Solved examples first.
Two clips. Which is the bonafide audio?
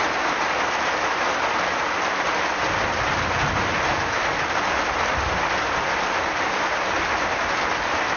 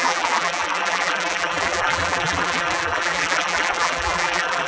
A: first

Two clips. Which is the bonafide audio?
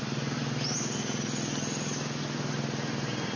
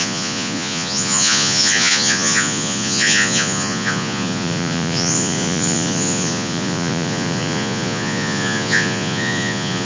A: first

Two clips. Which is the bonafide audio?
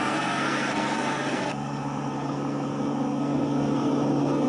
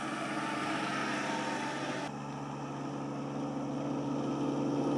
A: second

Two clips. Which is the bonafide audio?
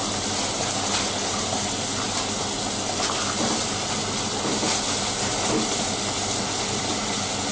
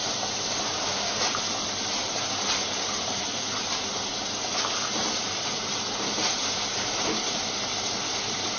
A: first